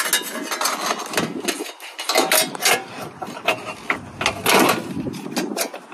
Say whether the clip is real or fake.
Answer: real